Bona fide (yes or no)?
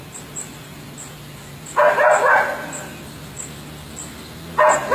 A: yes